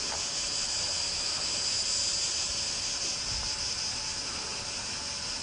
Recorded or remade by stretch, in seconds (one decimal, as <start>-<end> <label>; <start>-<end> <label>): 0.0-5.4 recorded